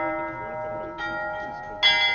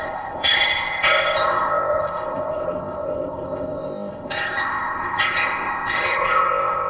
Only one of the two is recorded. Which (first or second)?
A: first